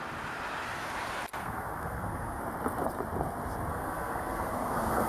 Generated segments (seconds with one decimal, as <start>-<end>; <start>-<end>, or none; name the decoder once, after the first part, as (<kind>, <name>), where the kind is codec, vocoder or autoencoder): 1.4-2.4 (codec, SNAC); 3.7-5.1